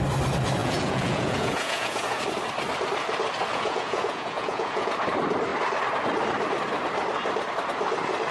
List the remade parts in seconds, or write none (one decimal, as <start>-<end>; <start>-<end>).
0.6-2.2; 3.5-4.9